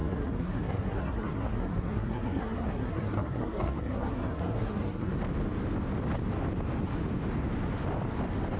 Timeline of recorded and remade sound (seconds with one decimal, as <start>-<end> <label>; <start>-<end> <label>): 0.0-5.1 remade; 5.1-8.6 recorded